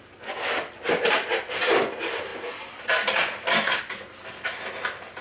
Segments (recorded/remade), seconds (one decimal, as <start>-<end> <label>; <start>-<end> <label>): 0.0-5.2 recorded

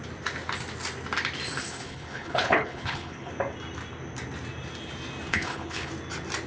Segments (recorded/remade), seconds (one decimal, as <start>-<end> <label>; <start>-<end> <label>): 0.0-1.6 recorded; 1.6-3.3 remade; 3.3-5.3 recorded; 5.3-5.9 remade; 5.9-6.5 recorded

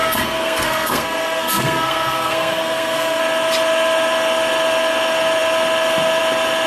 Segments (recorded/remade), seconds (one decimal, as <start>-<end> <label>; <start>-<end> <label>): 0.0-3.2 remade; 3.2-6.7 recorded

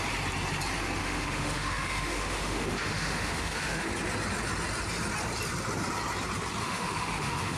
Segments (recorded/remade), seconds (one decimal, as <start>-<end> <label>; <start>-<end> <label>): 0.0-1.0 recorded; 1.0-3.9 remade; 3.9-6.6 recorded; 6.6-7.6 remade

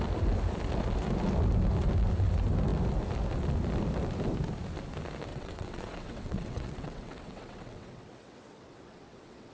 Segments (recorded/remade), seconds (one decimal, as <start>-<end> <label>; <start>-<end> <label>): 0.0-5.3 recorded; 5.3-9.5 remade